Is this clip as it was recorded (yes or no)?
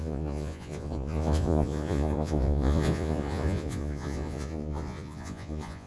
no